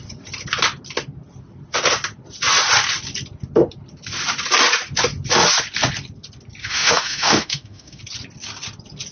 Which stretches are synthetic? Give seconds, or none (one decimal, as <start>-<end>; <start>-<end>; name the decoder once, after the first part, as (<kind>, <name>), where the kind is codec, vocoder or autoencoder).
6.6-8.0 (autoencoder, DAC-VAE)